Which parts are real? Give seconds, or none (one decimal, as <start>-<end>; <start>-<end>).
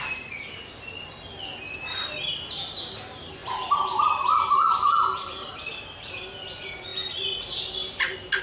0.0-3.4; 5.6-8.4